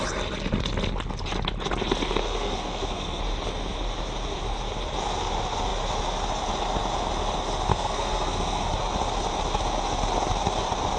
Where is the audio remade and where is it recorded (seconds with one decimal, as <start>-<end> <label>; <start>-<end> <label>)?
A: 0.0-2.2 recorded; 2.2-3.2 remade; 3.2-7.7 recorded; 7.7-8.7 remade; 8.7-11.0 recorded